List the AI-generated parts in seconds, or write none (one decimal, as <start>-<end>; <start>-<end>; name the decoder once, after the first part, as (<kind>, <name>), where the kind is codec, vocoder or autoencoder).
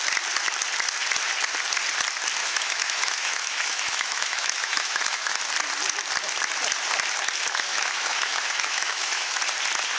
2.4-5.4 (autoencoder, DAC-VAE); 7.7-9.4